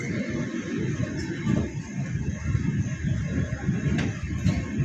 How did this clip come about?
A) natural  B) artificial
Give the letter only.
A